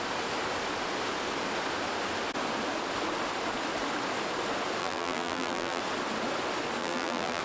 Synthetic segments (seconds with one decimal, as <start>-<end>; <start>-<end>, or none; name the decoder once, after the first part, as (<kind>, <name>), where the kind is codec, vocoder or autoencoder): 4.8-5.8 (vocoder, BigVGAN v2); 6.8-7.4